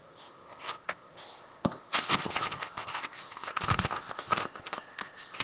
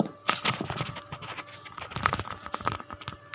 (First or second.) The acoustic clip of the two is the second